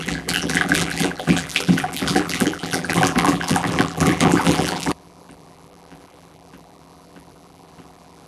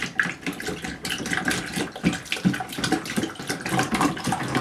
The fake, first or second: first